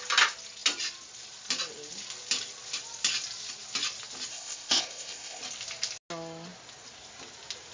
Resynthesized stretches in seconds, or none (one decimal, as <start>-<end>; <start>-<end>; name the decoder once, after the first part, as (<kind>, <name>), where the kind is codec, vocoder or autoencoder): 4.3-5.4 (codec, ZipCodec)